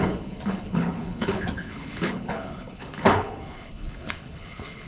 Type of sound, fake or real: fake